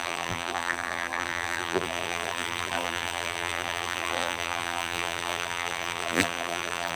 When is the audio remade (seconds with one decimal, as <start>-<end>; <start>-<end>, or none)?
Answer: 0.0-7.0